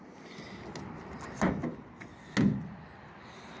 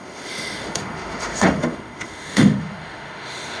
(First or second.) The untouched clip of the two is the first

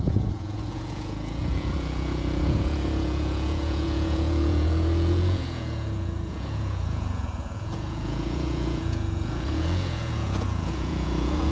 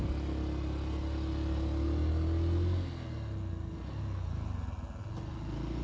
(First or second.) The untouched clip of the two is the second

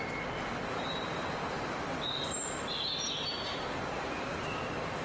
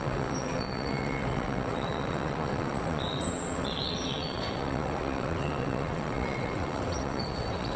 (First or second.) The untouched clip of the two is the first